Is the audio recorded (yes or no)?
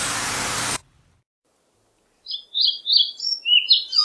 yes